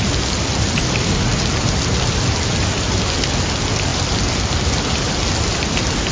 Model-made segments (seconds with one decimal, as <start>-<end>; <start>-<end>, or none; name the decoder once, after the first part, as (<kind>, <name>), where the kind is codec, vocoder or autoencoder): none